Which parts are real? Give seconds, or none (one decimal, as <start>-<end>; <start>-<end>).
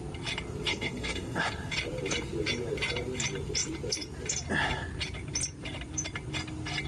0.0-0.7; 1.5-6.9